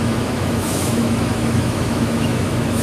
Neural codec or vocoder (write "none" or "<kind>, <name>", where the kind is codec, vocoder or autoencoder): autoencoder, DAC-VAE